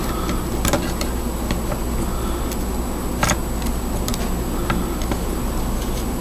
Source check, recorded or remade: recorded